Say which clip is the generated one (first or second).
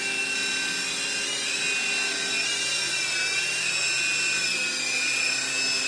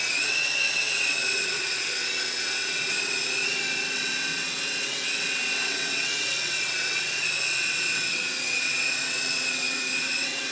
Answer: second